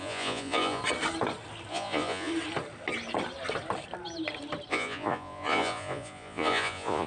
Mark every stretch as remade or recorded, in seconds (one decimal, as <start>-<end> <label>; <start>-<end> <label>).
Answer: 0.0-0.8 remade; 0.8-1.7 recorded; 1.7-2.3 remade; 2.3-4.7 recorded; 4.7-7.1 remade